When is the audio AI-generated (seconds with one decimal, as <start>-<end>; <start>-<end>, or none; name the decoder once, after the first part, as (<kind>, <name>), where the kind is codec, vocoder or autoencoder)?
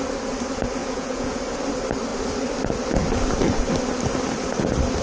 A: 0.8-1.4 (vocoder, Vocos)